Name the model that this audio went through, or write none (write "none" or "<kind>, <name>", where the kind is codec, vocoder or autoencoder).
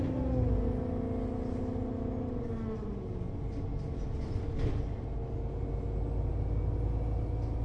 none